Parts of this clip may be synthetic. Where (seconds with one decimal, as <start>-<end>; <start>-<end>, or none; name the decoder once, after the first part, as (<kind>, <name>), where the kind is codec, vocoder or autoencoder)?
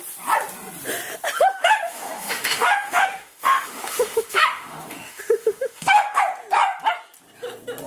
1.5-6.2 (autoencoder, DAC-VAE)